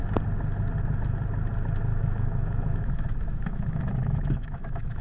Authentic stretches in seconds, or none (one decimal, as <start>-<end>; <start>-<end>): 0.0-1.9